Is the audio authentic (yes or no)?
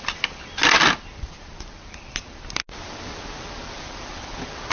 yes